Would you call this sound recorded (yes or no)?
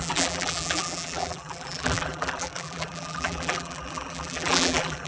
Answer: no